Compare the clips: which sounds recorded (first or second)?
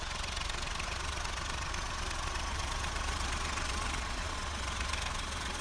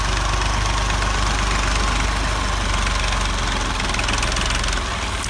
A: second